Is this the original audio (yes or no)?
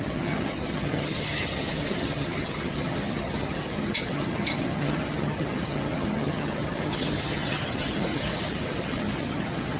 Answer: no